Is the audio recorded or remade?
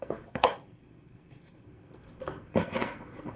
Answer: remade